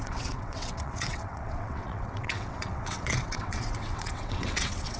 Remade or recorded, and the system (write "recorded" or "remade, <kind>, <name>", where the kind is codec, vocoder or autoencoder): remade, vocoder, WaveNeXt